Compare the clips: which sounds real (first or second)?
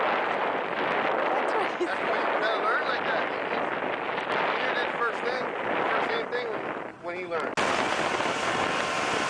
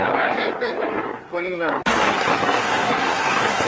first